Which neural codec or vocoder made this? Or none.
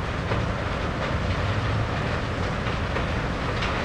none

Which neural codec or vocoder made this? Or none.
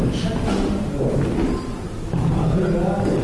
none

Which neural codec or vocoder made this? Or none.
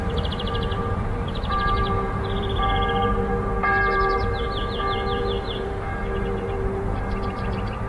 vocoder, BigVGAN v2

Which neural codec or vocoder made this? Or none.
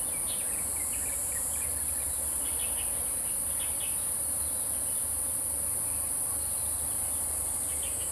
none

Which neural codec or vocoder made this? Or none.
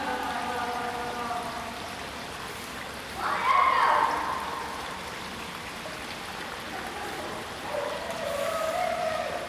none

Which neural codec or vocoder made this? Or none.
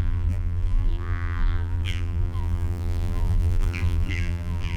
vocoder, BigVGAN v2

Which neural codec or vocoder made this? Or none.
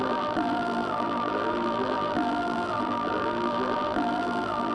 vocoder, BigVGAN v2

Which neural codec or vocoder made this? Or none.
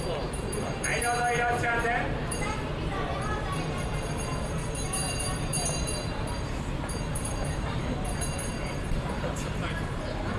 vocoder, BigVGAN v2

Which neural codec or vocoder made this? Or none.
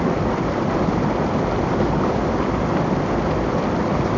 none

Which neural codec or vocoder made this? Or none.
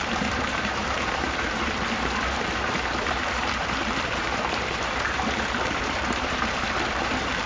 vocoder, BigVGAN v2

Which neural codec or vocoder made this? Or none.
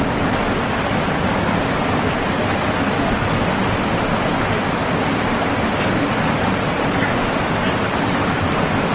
none